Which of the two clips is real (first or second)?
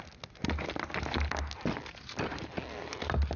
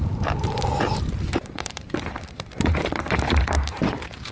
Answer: first